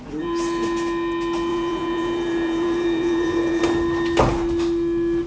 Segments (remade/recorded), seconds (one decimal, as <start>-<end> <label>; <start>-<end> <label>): 0.0-1.5 recorded; 1.5-3.6 remade; 3.6-5.3 recorded